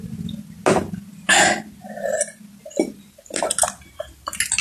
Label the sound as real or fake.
real